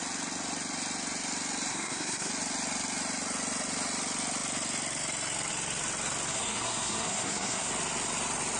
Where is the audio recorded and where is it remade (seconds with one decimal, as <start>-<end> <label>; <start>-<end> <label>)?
0.0-1.7 recorded; 1.7-2.3 remade; 2.3-6.3 recorded; 6.3-7.7 remade; 7.7-8.6 recorded